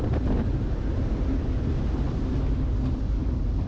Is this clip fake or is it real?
real